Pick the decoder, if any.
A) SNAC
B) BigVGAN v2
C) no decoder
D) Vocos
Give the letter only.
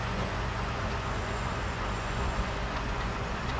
D